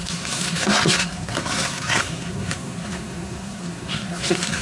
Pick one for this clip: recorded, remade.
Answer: remade